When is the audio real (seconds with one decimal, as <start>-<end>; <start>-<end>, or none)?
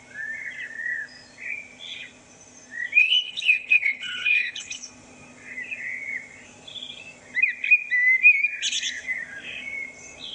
0.0-3.0; 4.9-10.3